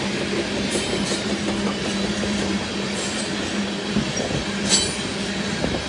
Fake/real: real